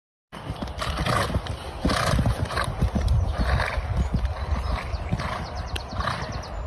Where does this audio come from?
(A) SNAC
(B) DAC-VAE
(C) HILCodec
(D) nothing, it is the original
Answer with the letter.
D